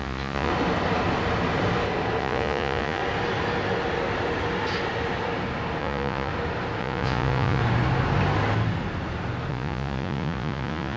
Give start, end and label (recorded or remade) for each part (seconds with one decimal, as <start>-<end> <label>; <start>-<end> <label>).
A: 0.0-0.5 remade; 0.5-2.2 recorded; 2.2-3.0 remade; 3.0-5.8 recorded; 5.8-6.3 remade; 6.3-6.8 recorded; 6.8-7.6 remade; 7.6-9.5 recorded; 9.5-11.0 remade